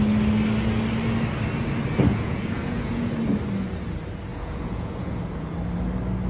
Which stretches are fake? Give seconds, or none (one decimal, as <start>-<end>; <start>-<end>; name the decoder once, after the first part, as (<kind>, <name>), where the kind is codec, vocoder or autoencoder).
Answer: 2.1-3.1 (vocoder, Vocos); 4.3-5.5